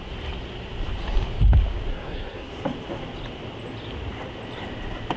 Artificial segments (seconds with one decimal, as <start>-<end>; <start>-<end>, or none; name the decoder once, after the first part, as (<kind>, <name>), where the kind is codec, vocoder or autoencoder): 1.9-2.5 (codec, SNAC)